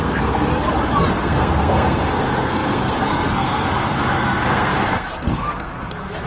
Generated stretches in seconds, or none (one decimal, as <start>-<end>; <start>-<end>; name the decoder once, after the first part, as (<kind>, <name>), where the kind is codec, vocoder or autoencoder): 0.0-0.5 (codec, SNAC); 1.1-6.3